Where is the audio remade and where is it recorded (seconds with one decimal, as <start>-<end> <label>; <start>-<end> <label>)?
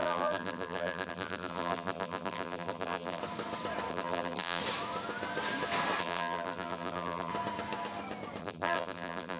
0.0-3.2 remade; 3.2-3.9 recorded; 3.9-4.6 remade; 4.6-6.0 recorded; 6.0-7.3 remade; 7.3-8.4 recorded; 8.4-9.4 remade